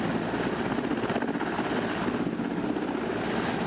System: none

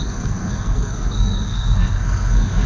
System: codec, SNAC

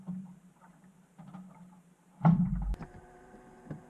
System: vocoder, BigVGAN v2